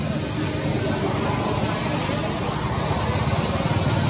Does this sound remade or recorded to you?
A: recorded